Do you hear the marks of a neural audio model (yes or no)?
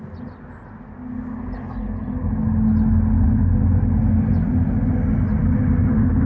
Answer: no